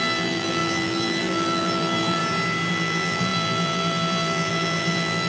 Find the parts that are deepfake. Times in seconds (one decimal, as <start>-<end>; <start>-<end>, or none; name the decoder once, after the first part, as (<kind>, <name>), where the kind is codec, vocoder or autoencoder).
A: 0.0-2.2 (vocoder, BigVGAN v2); 2.7-5.3